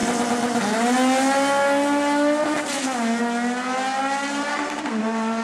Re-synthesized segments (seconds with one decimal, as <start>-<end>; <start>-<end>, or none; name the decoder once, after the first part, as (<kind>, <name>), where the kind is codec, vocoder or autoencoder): 4.5-5.0 (codec, SNAC)